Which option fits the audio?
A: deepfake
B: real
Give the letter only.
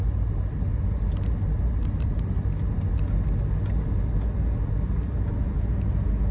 B